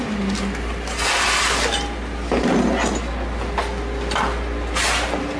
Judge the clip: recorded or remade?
recorded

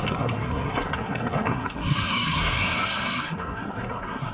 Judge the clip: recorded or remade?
remade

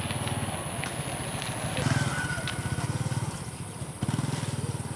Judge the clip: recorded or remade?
recorded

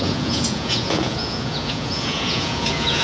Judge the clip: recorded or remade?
remade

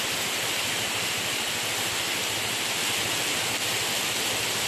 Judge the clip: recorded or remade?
recorded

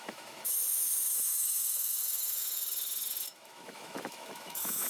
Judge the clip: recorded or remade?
remade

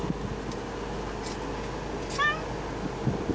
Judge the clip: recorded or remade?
recorded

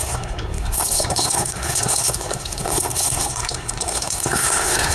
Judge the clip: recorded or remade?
remade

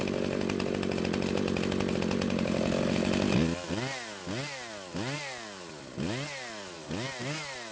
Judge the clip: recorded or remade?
recorded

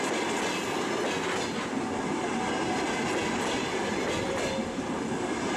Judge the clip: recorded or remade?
recorded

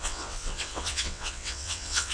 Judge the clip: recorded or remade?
remade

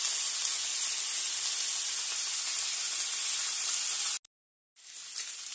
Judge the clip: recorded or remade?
recorded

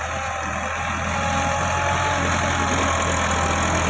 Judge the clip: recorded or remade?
recorded